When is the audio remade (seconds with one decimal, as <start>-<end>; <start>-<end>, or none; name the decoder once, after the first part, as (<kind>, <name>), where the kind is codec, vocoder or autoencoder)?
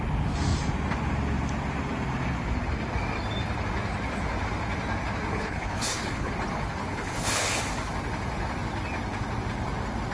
5.3-6.3 (codec, HILCodec); 6.8-7.6